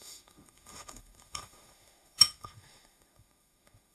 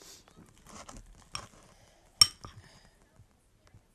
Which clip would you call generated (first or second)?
first